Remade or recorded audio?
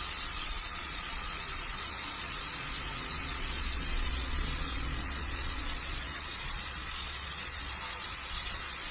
remade